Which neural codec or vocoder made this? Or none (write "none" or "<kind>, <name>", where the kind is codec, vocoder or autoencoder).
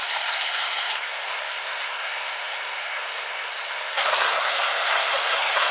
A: codec, SNAC